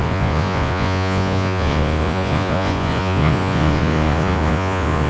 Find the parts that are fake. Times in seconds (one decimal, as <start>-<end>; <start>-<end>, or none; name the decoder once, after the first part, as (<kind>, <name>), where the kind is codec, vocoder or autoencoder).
0.0-5.1 (vocoder, Vocos)